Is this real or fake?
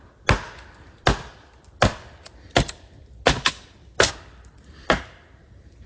real